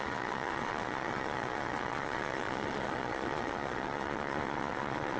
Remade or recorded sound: remade